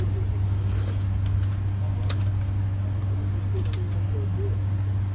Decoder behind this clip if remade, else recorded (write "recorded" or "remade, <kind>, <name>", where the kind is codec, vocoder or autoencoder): recorded